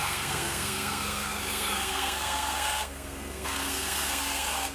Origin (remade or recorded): remade